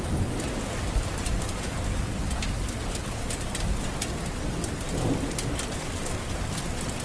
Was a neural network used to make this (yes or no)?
no